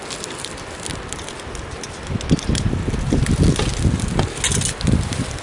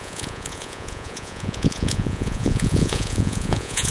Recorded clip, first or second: first